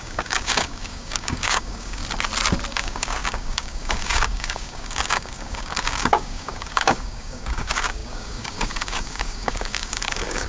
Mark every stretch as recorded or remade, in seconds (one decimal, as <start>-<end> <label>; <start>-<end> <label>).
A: 0.0-2.0 remade; 2.0-2.7 recorded; 2.7-10.5 remade